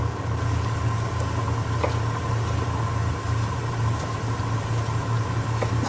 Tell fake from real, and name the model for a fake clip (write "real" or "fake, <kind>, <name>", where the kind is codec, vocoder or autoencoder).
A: real